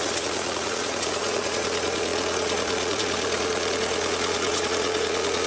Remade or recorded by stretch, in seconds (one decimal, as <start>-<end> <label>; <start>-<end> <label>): 0.0-5.5 remade